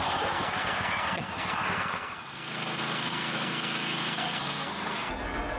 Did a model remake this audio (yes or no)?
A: yes